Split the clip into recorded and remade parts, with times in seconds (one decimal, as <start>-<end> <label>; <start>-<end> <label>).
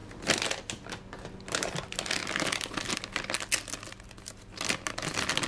0.0-5.5 recorded